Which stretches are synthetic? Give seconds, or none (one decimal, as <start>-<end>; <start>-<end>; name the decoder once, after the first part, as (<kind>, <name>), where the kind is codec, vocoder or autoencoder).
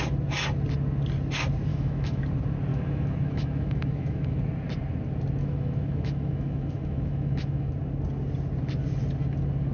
1.7-2.2 (autoencoder, DAC-VAE); 2.7-4.4; 5.4-7.7